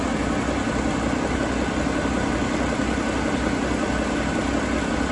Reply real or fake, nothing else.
real